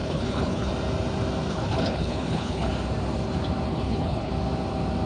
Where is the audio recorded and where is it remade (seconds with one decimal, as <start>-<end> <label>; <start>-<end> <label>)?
0.0-0.7 remade; 0.7-1.5 recorded; 1.5-2.7 remade; 2.7-3.7 recorded; 3.7-4.3 remade; 4.3-5.1 recorded